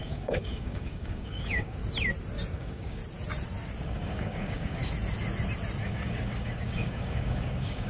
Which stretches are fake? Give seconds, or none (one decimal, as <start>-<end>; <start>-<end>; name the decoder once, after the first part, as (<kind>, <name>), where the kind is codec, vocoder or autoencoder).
0.0-1.8 (codec, DAC); 2.5-3.0; 3.8-4.8; 5.8-7.9